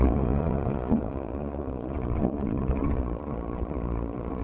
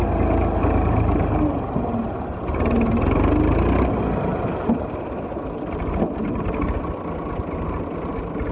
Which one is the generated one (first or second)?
first